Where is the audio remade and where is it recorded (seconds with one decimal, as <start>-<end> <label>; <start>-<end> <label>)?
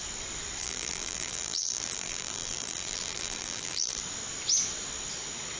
0.0-0.6 recorded; 0.6-4.0 remade; 4.0-5.6 recorded